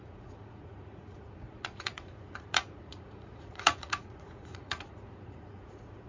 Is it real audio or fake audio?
fake